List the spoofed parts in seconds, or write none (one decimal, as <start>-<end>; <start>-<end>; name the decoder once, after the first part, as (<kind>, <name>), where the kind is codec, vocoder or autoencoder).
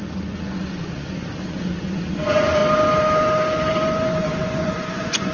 0.0-2.6 (vocoder, Vocos); 3.7-5.3